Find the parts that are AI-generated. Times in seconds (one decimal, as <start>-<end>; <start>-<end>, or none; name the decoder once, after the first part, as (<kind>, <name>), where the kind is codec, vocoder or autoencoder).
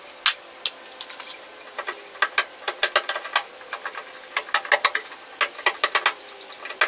none